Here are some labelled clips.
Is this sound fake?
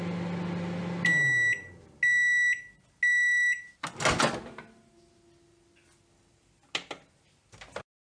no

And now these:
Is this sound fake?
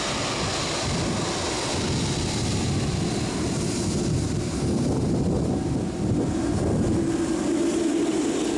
no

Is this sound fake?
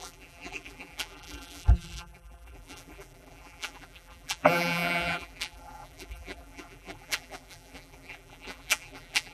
yes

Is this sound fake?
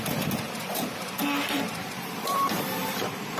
yes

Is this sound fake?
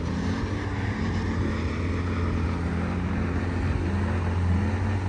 no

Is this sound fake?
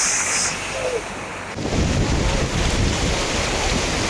no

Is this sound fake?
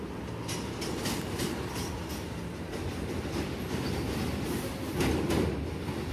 no